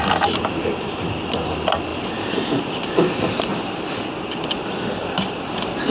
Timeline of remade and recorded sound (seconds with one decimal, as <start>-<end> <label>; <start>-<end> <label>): 0.0-3.5 recorded; 3.5-4.1 remade; 4.1-5.9 recorded